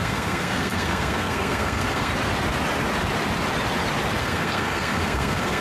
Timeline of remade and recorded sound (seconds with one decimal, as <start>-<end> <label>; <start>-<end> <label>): 0.0-2.1 remade; 2.1-4.2 recorded; 4.2-5.6 remade